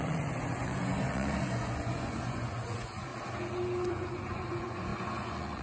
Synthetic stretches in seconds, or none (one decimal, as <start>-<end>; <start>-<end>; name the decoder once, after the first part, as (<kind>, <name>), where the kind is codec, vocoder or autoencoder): 0.0-3.1 (vocoder, Vocos); 3.9-5.6